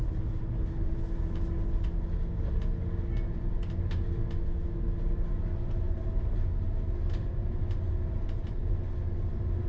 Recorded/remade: recorded